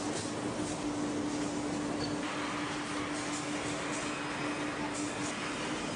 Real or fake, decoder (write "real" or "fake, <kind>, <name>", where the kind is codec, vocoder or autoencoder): real